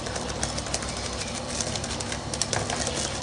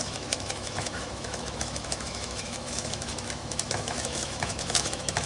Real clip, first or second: first